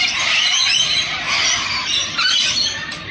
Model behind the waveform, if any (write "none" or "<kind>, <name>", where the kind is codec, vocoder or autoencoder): none